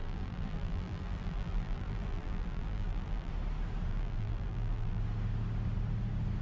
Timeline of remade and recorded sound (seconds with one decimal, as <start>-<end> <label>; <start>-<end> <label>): 0.0-3.3 remade; 3.3-3.9 recorded; 3.9-5.0 remade; 5.0-6.4 recorded